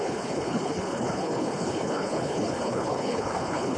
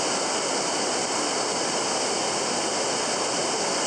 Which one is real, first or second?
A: second